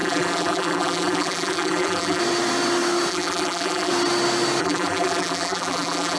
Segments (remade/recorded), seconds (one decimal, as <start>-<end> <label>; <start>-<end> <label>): 0.0-2.2 remade; 2.2-3.1 recorded; 3.1-3.9 remade; 3.9-4.6 recorded; 4.6-6.2 remade